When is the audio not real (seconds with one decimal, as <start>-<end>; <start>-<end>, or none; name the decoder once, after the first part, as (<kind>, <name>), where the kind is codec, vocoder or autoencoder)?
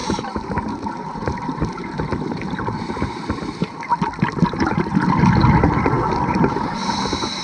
0.0-3.9 (vocoder, BigVGAN v2); 5.5-6.8